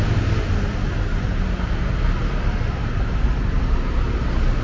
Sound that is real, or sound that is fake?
real